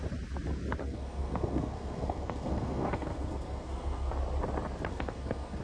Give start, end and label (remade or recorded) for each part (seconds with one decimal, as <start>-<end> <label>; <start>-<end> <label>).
0.0-0.8 recorded; 0.8-4.1 remade; 4.1-4.9 recorded; 4.9-5.6 remade